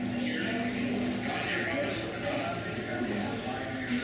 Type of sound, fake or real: real